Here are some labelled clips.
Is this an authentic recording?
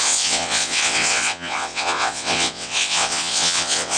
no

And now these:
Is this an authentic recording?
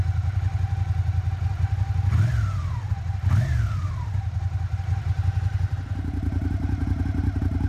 yes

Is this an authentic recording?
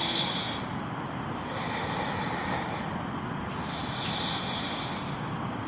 yes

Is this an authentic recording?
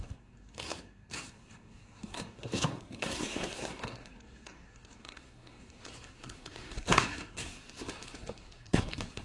no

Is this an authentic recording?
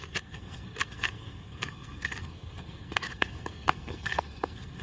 no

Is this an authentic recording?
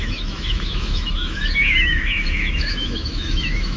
no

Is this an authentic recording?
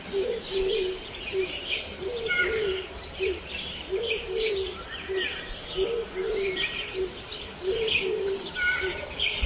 no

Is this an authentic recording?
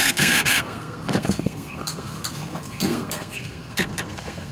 no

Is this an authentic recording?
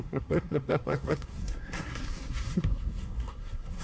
no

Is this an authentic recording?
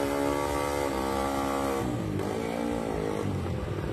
yes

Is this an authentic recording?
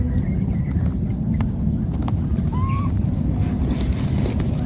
yes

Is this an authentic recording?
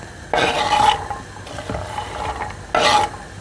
yes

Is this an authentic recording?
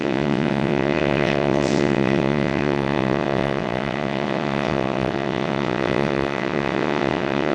no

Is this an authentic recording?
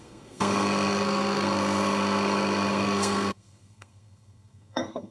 no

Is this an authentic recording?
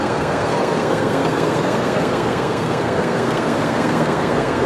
no